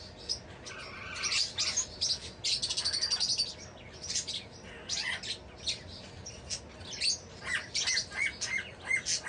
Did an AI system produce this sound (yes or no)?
no